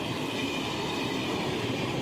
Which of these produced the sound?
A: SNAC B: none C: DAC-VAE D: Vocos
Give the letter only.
B